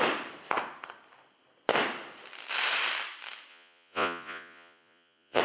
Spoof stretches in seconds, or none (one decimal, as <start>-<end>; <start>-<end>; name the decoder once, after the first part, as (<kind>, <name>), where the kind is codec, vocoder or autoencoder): 3.5-5.4 (vocoder, Vocos)